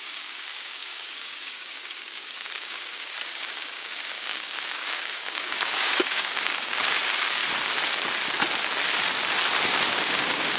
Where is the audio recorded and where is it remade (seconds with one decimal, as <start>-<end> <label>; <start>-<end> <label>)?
0.0-7.4 remade; 7.4-9.9 recorded; 9.9-10.6 remade